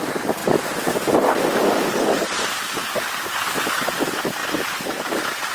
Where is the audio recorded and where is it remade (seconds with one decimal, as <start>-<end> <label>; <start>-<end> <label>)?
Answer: 0.0-0.4 recorded; 0.4-3.7 remade; 3.7-4.4 recorded; 4.4-5.1 remade; 5.1-5.5 recorded